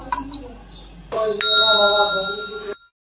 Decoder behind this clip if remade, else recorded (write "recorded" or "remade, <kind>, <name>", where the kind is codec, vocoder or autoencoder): recorded